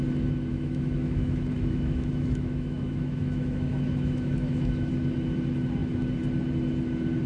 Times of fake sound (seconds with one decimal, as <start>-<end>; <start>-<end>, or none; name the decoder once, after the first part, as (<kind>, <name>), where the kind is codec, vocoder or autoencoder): 0.5-4.9 (autoencoder, DAC-VAE)